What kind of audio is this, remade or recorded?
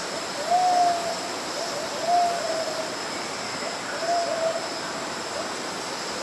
recorded